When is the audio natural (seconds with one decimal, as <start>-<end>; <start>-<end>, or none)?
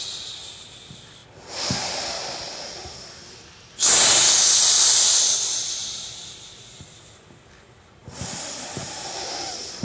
0.0-8.0